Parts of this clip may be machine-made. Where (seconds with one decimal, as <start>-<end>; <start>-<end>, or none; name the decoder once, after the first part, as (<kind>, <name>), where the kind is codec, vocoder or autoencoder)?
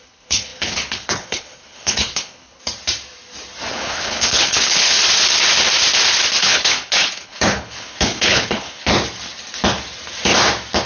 0.0-2.6 (codec, HILCodec); 3.7-5.0; 6.4-8.9